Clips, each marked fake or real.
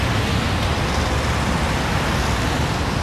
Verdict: real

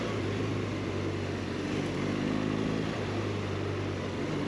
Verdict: real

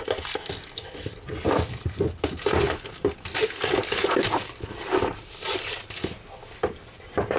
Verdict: real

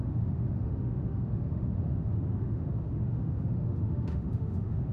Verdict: fake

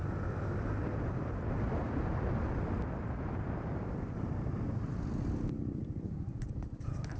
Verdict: fake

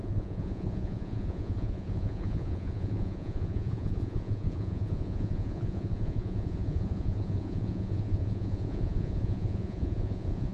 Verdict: fake